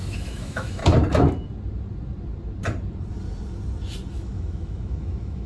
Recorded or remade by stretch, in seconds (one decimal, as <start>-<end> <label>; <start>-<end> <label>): 0.0-0.8 remade; 0.8-4.1 recorded; 4.1-5.5 remade